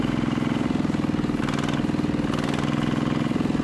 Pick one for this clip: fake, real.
real